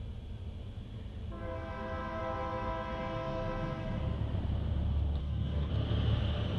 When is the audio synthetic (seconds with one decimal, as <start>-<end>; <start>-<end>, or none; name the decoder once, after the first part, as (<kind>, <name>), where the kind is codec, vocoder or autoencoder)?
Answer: 5.2-5.7 (codec, DAC)